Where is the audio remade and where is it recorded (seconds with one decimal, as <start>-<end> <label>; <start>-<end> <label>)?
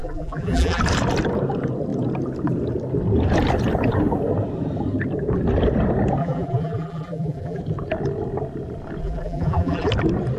0.0-0.8 remade; 0.8-6.2 recorded; 6.2-7.6 remade; 7.6-9.0 recorded; 9.0-9.9 remade; 9.9-10.4 recorded